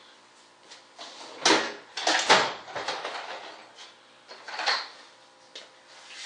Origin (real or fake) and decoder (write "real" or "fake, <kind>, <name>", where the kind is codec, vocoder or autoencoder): real